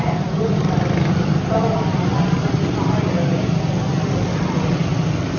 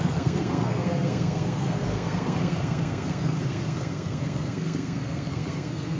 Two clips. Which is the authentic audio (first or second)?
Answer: first